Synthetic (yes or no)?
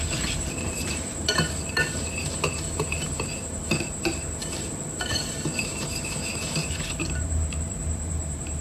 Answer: yes